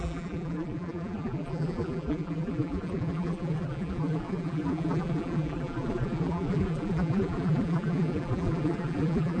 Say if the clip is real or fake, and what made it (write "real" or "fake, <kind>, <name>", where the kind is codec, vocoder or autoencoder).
fake, vocoder, BigVGAN v2